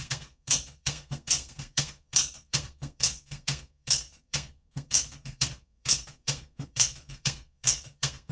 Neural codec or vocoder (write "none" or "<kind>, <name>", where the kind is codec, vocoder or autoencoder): codec, SNAC